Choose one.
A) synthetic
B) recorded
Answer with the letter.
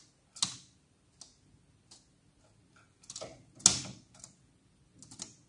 B